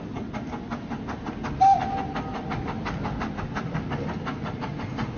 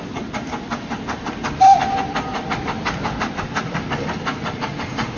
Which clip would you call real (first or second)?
first